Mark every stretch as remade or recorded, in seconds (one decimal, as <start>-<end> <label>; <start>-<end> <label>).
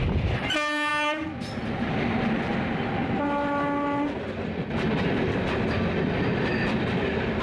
0.0-7.4 recorded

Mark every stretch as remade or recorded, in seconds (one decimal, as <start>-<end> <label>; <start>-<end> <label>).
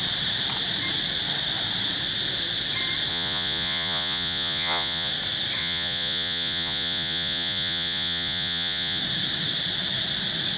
0.0-3.1 recorded; 3.1-5.1 remade; 5.1-5.6 recorded; 5.6-9.0 remade; 9.0-10.6 recorded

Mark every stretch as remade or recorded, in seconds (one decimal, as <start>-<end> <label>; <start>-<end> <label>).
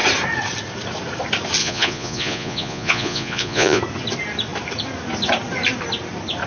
0.0-1.6 recorded; 1.6-3.8 remade; 3.8-6.5 recorded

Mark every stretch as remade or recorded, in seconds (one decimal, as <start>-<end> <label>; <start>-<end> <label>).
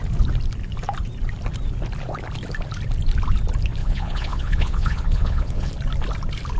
0.0-3.8 recorded; 3.8-5.7 remade; 5.7-6.6 recorded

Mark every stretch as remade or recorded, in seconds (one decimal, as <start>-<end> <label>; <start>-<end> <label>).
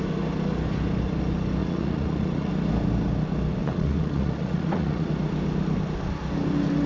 0.0-1.6 recorded; 1.6-2.5 remade; 2.5-3.6 recorded; 3.6-5.1 remade; 5.1-6.9 recorded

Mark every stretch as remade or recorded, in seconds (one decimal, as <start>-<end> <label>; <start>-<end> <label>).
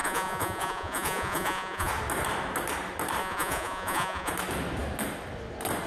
0.0-1.9 remade; 1.9-3.2 recorded; 3.2-4.3 remade; 4.3-5.9 recorded